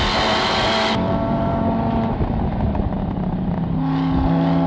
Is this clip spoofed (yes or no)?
no